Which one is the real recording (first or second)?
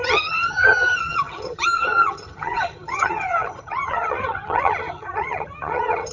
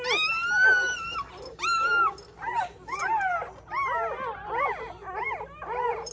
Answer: second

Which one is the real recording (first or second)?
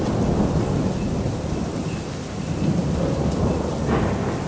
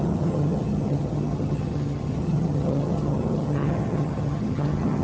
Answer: first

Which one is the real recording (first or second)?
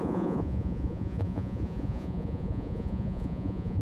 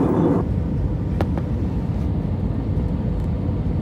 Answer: second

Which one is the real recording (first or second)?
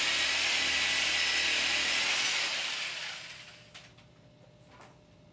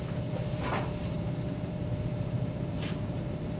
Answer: first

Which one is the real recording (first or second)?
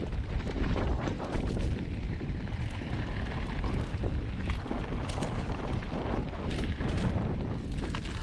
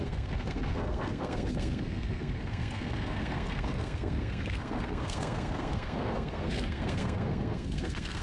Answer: first